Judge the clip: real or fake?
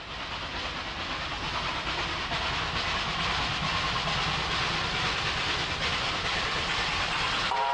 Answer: real